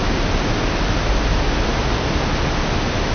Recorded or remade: recorded